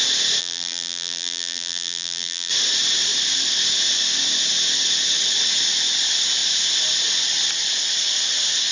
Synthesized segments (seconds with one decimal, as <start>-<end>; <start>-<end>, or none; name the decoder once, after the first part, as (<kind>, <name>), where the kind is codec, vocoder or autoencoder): 0.4-2.5 (vocoder, BigVGAN v2)